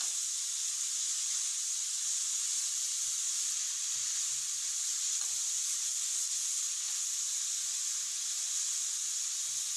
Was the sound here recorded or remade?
recorded